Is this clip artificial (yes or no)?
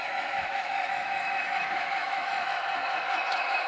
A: yes